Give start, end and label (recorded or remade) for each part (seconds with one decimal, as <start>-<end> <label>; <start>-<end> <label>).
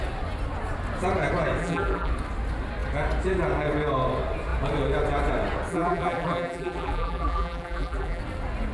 0.0-1.6 recorded; 1.6-2.1 remade; 2.1-5.7 recorded; 5.7-8.2 remade; 8.2-8.7 recorded